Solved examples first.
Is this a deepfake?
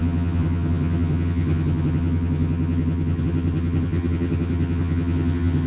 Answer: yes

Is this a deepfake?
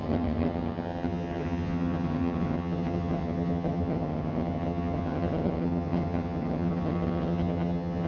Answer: yes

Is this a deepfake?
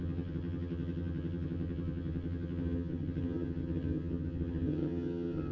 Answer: yes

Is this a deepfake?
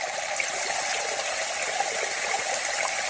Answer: no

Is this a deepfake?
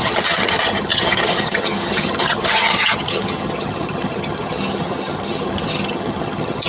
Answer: yes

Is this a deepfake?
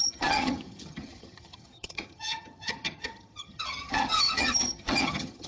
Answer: yes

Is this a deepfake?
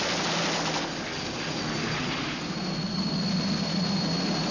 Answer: no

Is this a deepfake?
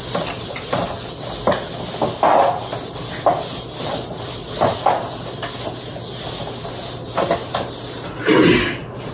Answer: no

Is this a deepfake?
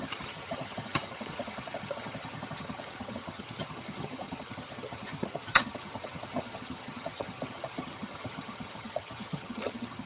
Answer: yes